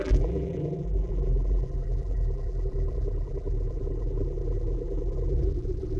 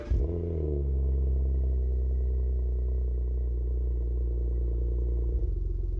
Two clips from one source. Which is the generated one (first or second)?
first